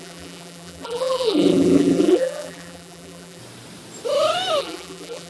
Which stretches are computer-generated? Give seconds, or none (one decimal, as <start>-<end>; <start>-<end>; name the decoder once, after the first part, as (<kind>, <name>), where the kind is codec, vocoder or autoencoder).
0.0-3.4 (vocoder, BigVGAN v2); 4.6-5.3